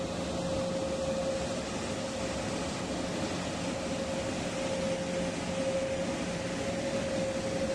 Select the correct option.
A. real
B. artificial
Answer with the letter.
A